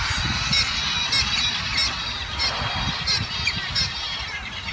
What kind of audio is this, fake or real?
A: fake